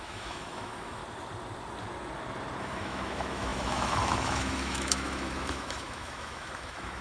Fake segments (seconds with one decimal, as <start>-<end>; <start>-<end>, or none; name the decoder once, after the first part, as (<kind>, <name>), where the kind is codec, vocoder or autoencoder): 0.0-1.0 (autoencoder, DAC-VAE); 2.6-7.0